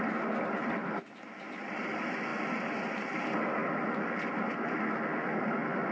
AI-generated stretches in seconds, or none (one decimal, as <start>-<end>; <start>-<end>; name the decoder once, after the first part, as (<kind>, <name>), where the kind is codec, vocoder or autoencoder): none